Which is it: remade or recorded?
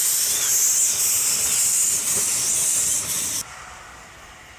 recorded